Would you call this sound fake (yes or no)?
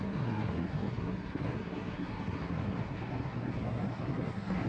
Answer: yes